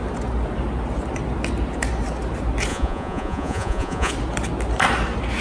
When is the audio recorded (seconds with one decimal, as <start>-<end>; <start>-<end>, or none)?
0.0-2.7; 4.1-5.4